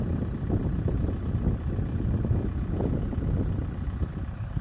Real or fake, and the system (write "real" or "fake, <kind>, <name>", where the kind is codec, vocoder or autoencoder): fake, vocoder, BigVGAN v2